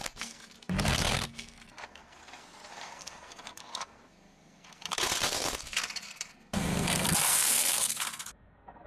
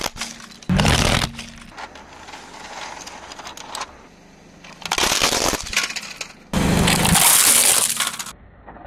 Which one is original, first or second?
second